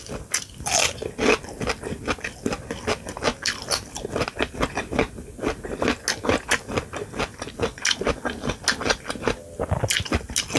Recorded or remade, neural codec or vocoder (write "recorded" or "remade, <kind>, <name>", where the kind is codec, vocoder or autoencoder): recorded